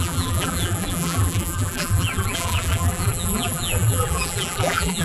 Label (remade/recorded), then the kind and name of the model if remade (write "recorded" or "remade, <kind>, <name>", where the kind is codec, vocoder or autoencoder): remade, vocoder, BigVGAN v2